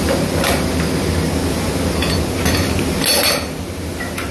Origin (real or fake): real